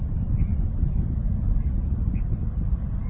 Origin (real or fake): real